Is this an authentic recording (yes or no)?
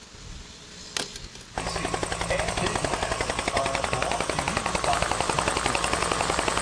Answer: yes